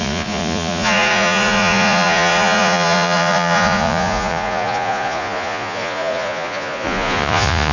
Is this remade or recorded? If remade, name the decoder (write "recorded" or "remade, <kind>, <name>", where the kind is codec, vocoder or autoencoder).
remade, vocoder, Vocos